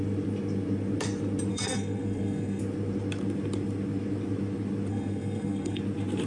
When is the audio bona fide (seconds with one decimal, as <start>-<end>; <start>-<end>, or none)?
0.0-1.5; 2.6-4.9; 5.8-6.3